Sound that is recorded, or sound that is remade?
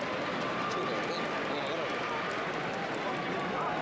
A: recorded